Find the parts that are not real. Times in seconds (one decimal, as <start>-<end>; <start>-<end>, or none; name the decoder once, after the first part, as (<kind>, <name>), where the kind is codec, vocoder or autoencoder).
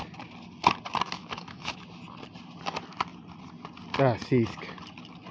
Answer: 1.2-1.8 (autoencoder, DAC-VAE)